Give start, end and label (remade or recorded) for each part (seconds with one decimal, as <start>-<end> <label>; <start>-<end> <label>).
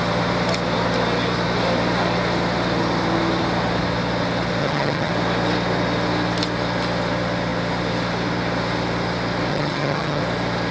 0.0-4.6 recorded; 4.6-5.1 remade; 5.1-9.5 recorded; 9.5-10.2 remade; 10.2-10.7 recorded